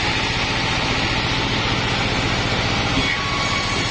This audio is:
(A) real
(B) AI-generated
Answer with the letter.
A